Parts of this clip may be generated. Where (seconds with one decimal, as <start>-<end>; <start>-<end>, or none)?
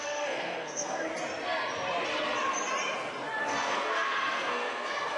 0.0-1.1; 3.4-5.2